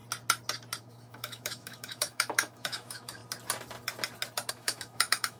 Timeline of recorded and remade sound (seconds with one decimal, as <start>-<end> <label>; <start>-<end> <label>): 0.0-0.8 recorded; 0.8-3.2 remade; 3.2-4.5 recorded; 4.5-5.4 remade